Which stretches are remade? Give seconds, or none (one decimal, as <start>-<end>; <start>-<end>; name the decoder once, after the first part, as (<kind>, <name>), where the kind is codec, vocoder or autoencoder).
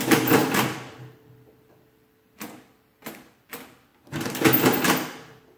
0.0-3.9 (vocoder, BigVGAN v2)